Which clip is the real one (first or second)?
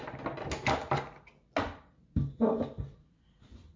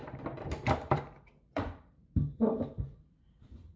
first